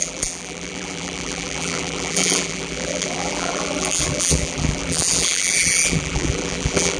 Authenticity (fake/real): fake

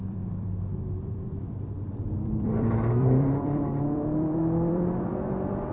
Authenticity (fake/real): fake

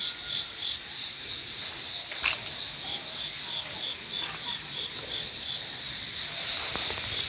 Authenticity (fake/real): real